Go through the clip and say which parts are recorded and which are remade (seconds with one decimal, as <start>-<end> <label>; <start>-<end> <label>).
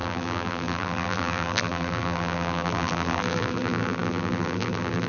0.0-5.1 remade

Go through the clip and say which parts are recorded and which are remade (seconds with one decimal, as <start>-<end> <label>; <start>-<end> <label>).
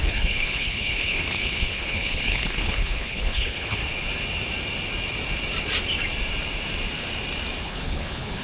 0.0-3.8 remade; 3.8-7.6 recorded; 7.6-8.4 remade